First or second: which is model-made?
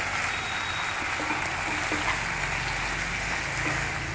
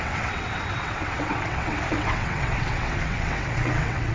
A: second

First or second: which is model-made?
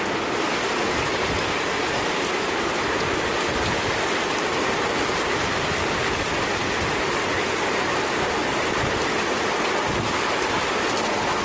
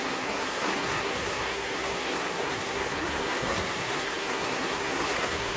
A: second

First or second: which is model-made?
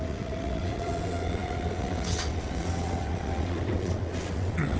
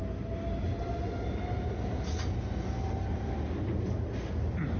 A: first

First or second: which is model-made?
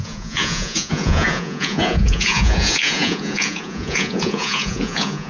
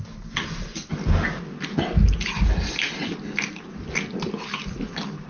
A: first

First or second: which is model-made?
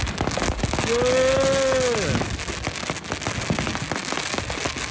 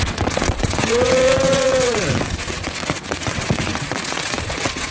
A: second